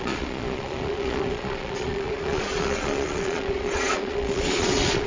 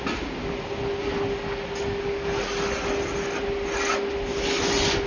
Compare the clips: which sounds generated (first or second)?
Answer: first